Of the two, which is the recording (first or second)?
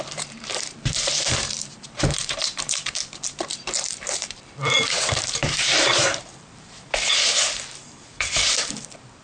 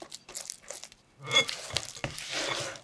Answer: second